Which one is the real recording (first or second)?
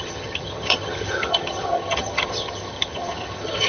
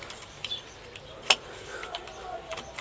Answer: second